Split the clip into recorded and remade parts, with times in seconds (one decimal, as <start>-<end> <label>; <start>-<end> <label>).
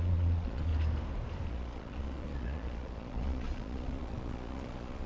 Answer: 0.0-0.7 remade; 0.7-1.5 recorded; 1.5-5.1 remade